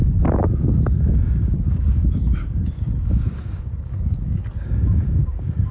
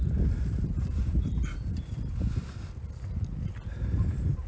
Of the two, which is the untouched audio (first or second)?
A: second